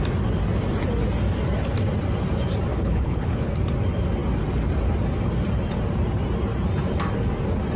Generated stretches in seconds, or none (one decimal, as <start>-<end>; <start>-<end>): 2.7-3.5